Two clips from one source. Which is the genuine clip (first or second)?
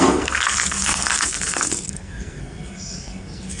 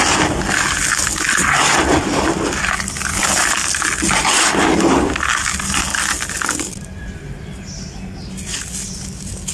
second